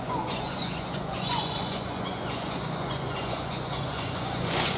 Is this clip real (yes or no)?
no